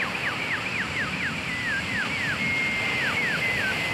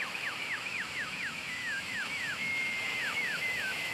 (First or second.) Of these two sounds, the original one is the first